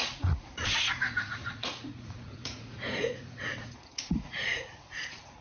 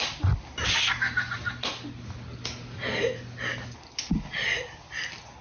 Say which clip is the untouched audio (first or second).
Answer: second